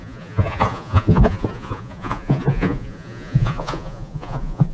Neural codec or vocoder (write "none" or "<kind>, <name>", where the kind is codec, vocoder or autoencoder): vocoder, Vocos